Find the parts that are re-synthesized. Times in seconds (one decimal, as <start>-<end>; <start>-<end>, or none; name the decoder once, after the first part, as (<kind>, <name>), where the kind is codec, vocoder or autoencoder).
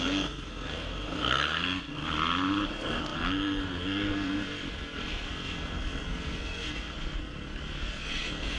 0.0-2.0 (codec, SNAC); 2.7-8.6